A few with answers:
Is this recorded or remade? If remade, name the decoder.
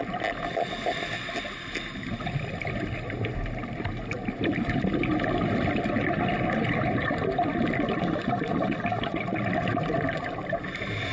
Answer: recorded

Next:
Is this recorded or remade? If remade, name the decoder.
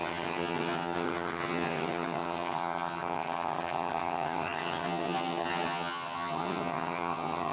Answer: remade, vocoder, HiFi-GAN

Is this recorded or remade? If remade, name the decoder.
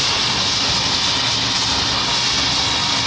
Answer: recorded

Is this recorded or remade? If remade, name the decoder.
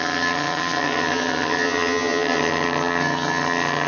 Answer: remade, vocoder, HiFi-GAN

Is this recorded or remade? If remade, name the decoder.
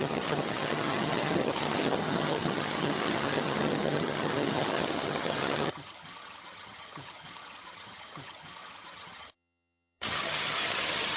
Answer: remade, vocoder, HiFi-GAN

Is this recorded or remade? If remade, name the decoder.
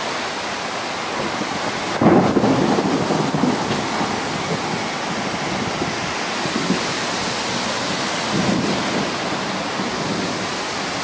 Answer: recorded